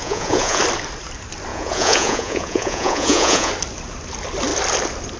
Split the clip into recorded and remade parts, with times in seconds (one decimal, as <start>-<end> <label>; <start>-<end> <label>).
0.0-0.6 remade; 0.6-1.5 recorded; 1.5-3.5 remade; 3.5-5.2 recorded